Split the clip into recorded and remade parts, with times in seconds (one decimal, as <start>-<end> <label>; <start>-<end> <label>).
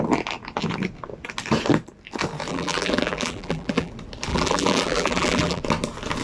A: 0.0-2.5 recorded; 2.5-3.9 remade; 3.9-4.3 recorded; 4.3-5.6 remade; 5.6-6.2 recorded